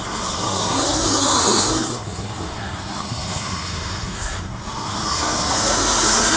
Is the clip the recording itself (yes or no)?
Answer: no